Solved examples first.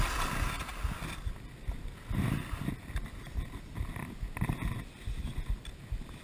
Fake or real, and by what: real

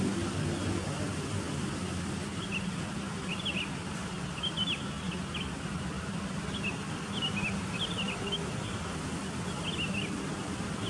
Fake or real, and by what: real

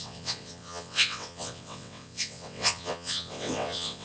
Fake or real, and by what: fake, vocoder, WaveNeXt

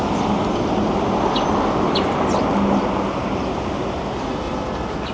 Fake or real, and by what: real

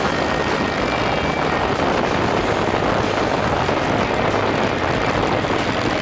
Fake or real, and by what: real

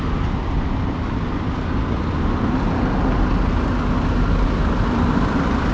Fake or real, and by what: real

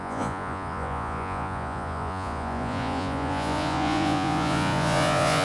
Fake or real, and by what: fake, vocoder, Vocos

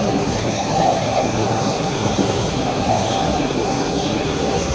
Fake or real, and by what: fake, codec, SNAC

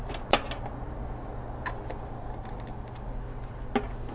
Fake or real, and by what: real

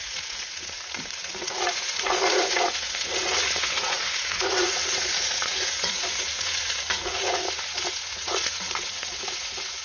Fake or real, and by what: fake, vocoder, Vocos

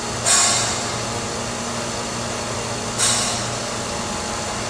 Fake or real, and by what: real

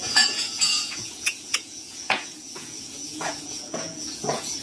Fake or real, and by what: fake, vocoder, Vocos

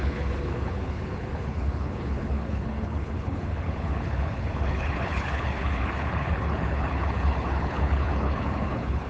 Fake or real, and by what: fake, codec, HILCodec